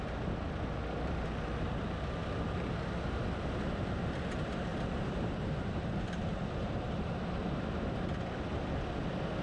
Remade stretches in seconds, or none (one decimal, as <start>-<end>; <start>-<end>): 4.7-7.2